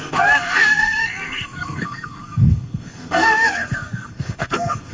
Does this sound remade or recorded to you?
remade